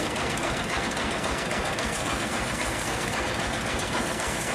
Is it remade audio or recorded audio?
remade